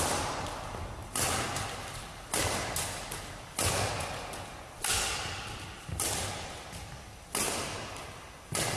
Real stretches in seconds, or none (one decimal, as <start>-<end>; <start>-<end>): 0.0-8.8